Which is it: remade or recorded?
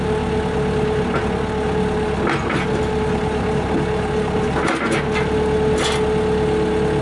recorded